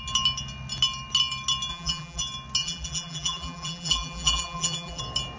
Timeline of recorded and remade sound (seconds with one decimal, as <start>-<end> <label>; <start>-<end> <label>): 0.0-1.7 recorded; 1.7-2.2 remade; 2.2-2.6 recorded; 2.6-5.0 remade; 5.0-5.4 recorded